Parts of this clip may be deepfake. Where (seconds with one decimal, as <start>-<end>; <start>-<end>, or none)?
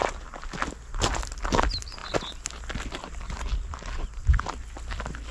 none